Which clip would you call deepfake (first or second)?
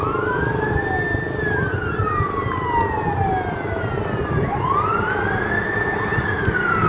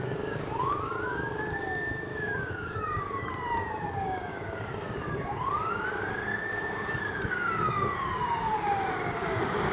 second